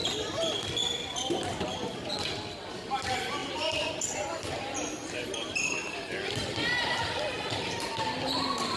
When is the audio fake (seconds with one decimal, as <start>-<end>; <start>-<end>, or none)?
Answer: 3.4-7.9